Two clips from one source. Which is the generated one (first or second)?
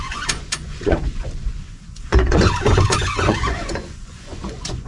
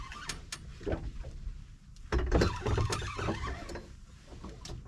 first